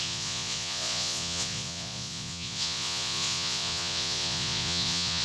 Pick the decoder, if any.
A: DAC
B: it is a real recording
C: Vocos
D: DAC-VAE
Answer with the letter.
C